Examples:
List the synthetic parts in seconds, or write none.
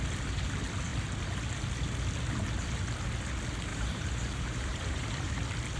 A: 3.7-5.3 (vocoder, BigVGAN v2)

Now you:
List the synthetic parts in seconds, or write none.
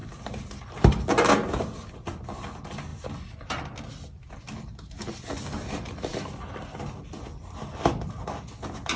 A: 0.0-0.6 (vocoder, BigVGAN v2)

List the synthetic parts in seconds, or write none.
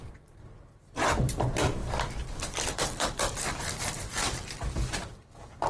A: 1.1-1.8 (vocoder, BigVGAN v2); 2.5-5.7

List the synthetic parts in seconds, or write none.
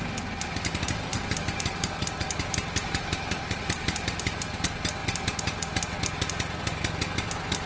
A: 1.1-4.4 (vocoder, BigVGAN v2); 5.0-5.8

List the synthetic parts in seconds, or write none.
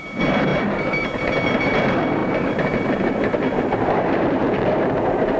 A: 0.0-5.4 (vocoder, BigVGAN v2)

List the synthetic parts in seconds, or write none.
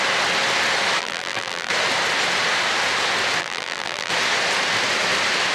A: 1.0-1.7 (vocoder, BigVGAN v2); 3.4-4.1